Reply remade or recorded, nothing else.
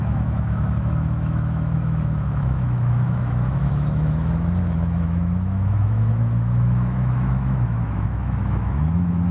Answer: remade